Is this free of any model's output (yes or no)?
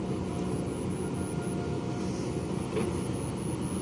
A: yes